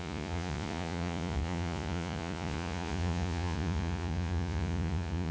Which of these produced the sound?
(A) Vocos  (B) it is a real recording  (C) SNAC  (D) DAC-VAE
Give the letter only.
A